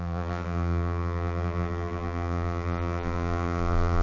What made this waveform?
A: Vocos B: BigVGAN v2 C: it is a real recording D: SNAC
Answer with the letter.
B